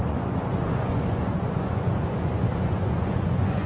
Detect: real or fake fake